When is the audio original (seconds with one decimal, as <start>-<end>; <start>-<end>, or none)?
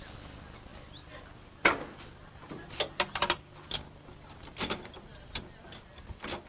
0.0-6.5